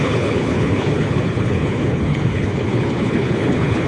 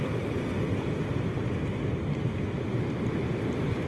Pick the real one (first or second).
second